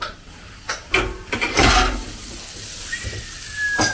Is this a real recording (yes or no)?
yes